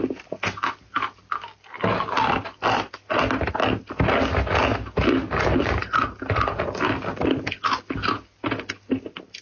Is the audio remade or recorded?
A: recorded